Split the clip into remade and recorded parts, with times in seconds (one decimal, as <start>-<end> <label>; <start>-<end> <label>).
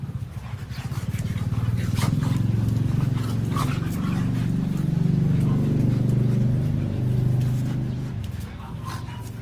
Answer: 0.0-8.2 recorded; 8.2-8.9 remade; 8.9-9.4 recorded